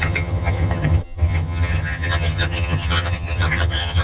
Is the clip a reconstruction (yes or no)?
yes